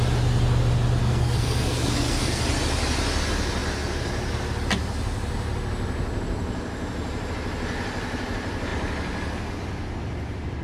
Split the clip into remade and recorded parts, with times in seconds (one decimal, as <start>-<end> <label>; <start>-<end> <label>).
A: 0.0-1.0 recorded; 1.0-2.4 remade; 2.4-10.6 recorded